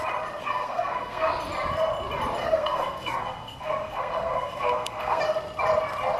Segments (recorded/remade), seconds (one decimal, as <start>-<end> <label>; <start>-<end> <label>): 0.0-0.4 recorded; 0.4-1.3 remade; 1.3-2.4 recorded; 2.4-5.2 remade; 5.2-6.2 recorded